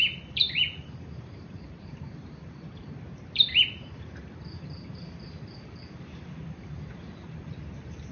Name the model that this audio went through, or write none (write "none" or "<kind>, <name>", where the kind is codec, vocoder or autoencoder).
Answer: vocoder, BigVGAN v2